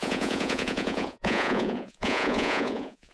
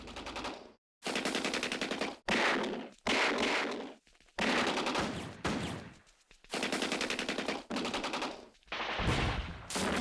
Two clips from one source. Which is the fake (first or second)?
first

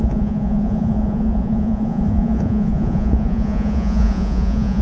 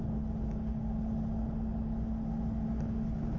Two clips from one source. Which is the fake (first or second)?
first